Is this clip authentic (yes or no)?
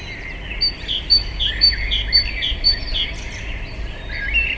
yes